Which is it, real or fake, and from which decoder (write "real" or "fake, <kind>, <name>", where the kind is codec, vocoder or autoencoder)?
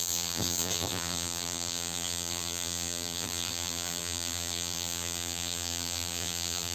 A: fake, vocoder, BigVGAN v2